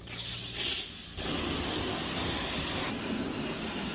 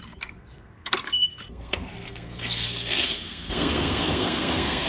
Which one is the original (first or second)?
first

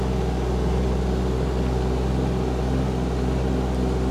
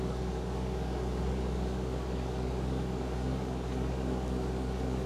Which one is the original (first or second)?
first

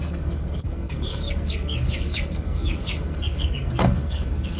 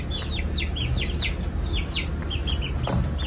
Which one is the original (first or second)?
second